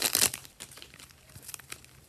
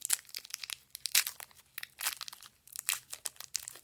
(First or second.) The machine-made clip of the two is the first